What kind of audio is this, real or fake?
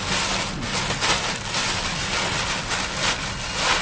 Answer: real